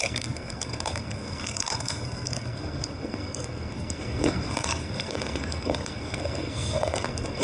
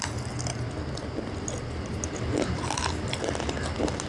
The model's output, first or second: first